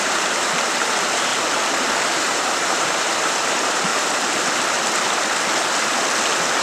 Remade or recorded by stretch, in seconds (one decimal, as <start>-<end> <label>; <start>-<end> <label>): 0.0-1.3 remade; 1.3-2.1 recorded; 2.1-3.9 remade; 3.9-6.6 recorded